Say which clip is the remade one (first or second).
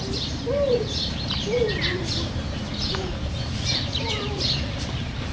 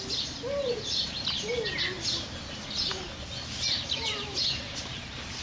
first